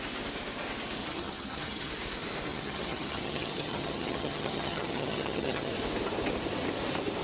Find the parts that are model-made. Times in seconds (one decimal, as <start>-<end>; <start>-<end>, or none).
1.0-1.9; 2.5-5.7